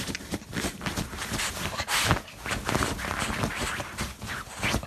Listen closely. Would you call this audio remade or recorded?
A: recorded